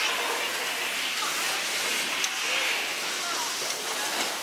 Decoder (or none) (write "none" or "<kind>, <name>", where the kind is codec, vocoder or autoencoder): none